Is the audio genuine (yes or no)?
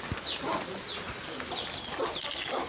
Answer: yes